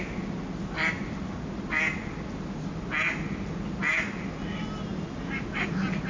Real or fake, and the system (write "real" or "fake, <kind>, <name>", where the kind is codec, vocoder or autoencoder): real